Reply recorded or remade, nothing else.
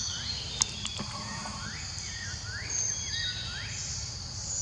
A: recorded